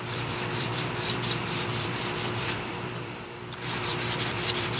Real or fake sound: fake